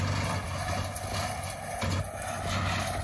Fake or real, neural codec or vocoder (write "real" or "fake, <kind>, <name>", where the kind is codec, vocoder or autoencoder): real